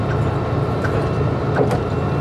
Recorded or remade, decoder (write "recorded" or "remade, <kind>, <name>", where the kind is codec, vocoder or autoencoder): recorded